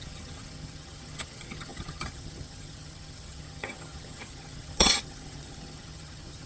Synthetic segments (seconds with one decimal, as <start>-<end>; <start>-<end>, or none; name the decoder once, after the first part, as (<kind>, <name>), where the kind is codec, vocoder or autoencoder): 0.0-6.5 (vocoder, HiFi-GAN)